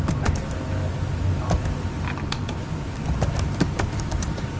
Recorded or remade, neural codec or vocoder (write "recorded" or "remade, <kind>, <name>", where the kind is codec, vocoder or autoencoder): recorded